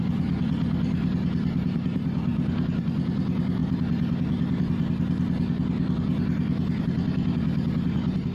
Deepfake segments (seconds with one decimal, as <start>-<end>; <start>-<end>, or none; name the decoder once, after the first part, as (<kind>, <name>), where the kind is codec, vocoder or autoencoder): 0.0-2.3 (vocoder, BigVGAN v2); 2.8-3.6; 6.8-8.3